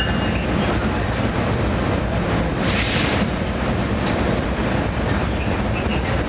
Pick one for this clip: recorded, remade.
remade